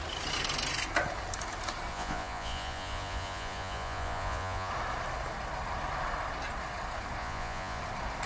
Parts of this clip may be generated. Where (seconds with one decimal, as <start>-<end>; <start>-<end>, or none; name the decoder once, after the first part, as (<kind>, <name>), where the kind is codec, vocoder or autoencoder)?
1.9-4.7 (vocoder, Vocos); 7.2-7.8